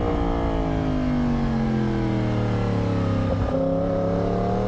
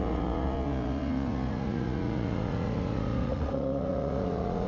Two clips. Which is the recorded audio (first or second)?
first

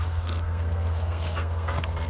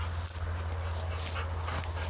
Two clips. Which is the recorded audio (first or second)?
second